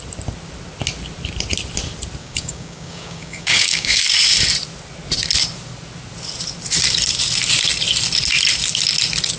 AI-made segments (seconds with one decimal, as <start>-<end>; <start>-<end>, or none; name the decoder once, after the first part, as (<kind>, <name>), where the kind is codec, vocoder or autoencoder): 2.2-4.0 (codec, DAC)